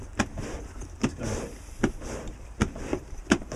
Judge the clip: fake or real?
fake